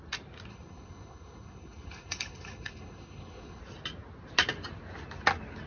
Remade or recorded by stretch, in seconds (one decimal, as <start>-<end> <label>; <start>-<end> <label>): 0.0-0.5 recorded; 0.5-3.6 remade; 3.6-5.7 recorded